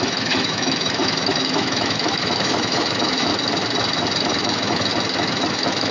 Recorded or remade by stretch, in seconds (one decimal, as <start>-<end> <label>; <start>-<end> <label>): 0.0-3.3 remade; 3.3-4.4 recorded; 4.4-4.9 remade; 4.9-5.5 recorded; 5.5-5.9 remade